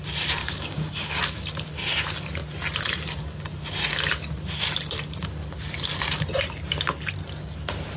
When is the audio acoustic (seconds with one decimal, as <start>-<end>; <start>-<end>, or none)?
0.0-0.4; 1.2-8.0